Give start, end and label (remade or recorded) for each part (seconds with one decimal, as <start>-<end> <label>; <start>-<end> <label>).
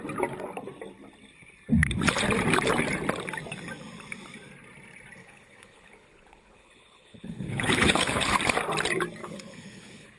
0.0-5.2 recorded; 5.2-8.3 remade; 8.3-9.2 recorded; 9.2-10.2 remade